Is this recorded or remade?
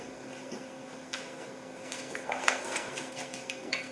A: remade